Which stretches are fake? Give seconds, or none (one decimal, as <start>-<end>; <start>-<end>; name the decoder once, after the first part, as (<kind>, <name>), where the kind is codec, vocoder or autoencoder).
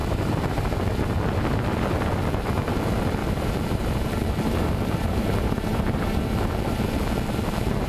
0.0-0.9 (vocoder, BigVGAN v2); 3.2-7.9